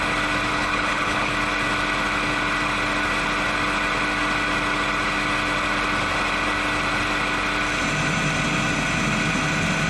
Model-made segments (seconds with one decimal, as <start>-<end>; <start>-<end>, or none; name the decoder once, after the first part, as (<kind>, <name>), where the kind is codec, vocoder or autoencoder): 0.5-1.3 (codec, HILCodec)